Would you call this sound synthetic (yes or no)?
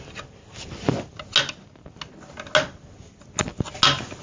no